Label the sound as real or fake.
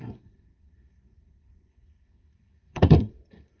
fake